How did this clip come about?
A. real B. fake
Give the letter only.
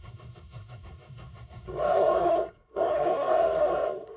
B